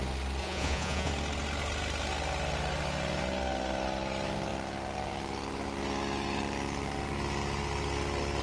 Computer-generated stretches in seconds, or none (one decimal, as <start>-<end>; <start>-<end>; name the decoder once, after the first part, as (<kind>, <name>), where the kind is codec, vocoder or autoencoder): 0.4-1.1 (vocoder, Vocos)